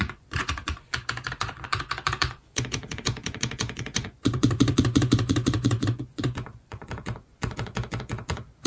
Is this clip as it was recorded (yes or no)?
no